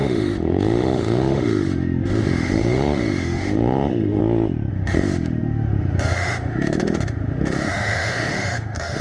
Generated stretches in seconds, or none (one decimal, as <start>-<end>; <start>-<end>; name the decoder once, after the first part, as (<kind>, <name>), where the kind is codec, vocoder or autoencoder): 0.0-4.2 (autoencoder, DAC-VAE); 4.7-9.0